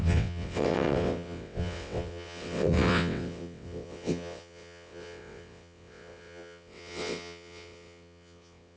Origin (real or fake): fake